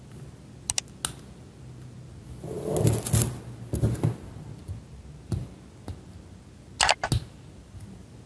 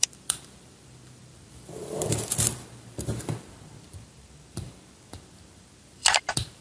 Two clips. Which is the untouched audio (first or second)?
first